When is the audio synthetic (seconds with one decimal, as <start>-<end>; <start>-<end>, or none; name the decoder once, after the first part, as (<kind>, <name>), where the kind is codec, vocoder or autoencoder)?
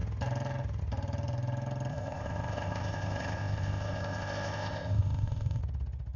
1.9-5.6 (codec, ZipCodec)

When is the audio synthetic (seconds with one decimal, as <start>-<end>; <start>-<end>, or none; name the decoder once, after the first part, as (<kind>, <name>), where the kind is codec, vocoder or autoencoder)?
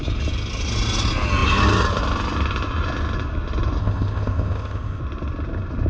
3.8-5.0 (codec, ZipCodec)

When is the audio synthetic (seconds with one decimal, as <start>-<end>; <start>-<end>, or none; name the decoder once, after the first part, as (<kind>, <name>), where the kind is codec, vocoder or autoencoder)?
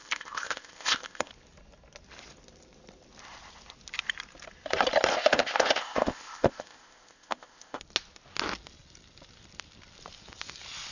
0.0-1.3 (codec, ZipCodec); 5.1-7.8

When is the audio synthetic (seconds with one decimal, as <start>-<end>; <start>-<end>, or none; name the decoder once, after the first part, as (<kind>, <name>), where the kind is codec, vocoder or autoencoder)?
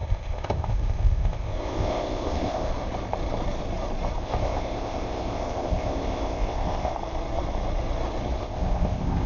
0.0-2.7 (codec, ZipCodec); 4.2-6.9; 8.4-9.3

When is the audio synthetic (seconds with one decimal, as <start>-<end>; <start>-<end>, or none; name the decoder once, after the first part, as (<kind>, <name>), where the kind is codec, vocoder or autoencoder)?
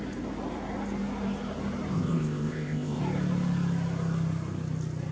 1.9-3.0 (codec, ZipCodec)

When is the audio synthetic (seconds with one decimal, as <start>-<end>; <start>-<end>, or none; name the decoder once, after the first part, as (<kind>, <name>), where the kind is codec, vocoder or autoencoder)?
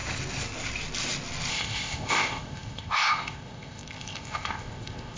1.5-5.2 (codec, ZipCodec)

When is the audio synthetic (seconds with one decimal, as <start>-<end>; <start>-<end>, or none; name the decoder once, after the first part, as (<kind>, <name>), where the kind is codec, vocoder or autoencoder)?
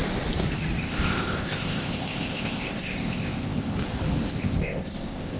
0.8-3.8 (codec, ZipCodec); 4.3-5.4